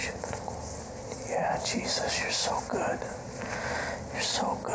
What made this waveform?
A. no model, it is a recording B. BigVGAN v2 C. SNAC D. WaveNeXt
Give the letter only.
A